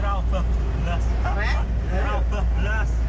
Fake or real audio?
real